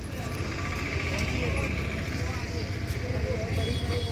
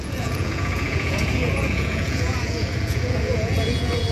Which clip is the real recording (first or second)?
first